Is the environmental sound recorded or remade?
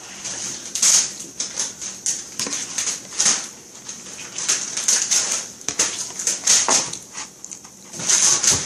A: recorded